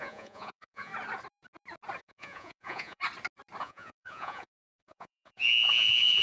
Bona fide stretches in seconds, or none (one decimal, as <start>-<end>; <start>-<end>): 0.9-2.0; 3.0-3.6